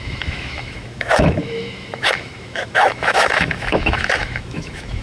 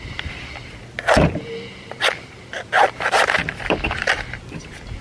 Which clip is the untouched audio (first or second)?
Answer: second